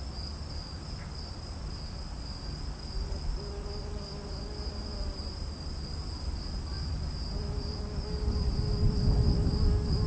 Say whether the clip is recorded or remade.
recorded